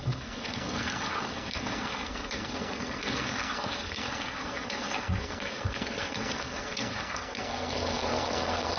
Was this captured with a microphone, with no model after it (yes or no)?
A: no